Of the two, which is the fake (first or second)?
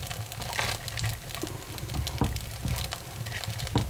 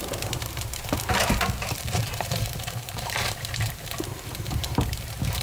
second